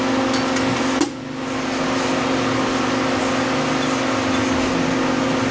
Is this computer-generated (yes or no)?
no